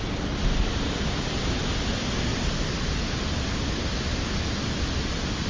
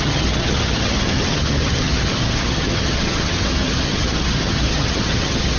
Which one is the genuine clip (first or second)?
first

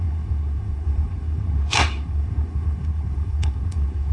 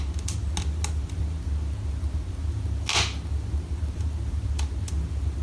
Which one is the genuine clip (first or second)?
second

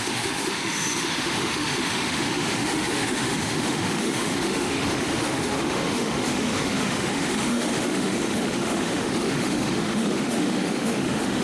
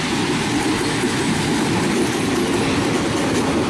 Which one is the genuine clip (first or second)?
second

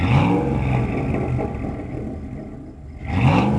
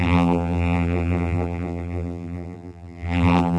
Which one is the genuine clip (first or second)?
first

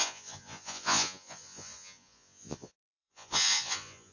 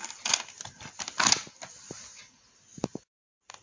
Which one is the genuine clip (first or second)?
second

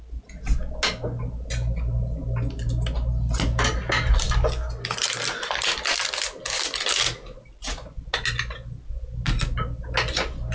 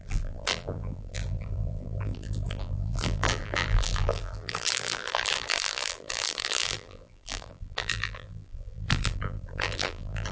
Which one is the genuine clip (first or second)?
first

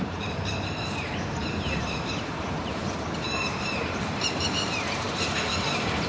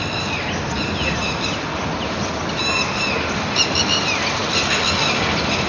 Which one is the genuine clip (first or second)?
second